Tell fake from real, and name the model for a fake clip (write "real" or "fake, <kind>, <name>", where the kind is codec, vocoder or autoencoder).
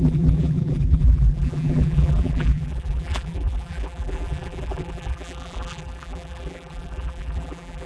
fake, vocoder, BigVGAN v2